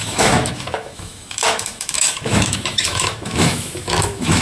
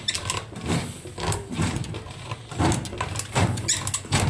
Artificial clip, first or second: first